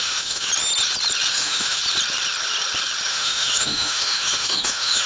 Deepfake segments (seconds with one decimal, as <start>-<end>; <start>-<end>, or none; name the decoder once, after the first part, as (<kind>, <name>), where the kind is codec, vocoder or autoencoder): 0.0-0.5 (autoencoder, DAC-VAE); 1.3-1.8; 3.1-5.1